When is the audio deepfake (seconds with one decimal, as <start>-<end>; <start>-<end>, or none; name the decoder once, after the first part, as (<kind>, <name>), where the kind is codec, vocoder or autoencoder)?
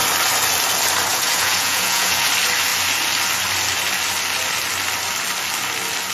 1.1-2.3 (vocoder, Vocos)